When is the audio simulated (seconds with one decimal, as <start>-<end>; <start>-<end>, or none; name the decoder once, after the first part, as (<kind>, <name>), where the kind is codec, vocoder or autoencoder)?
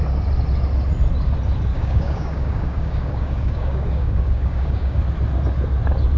1.7-5.0 (codec, DAC)